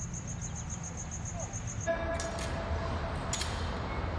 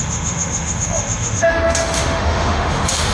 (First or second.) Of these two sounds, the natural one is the first